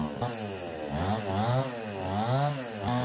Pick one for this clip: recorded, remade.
recorded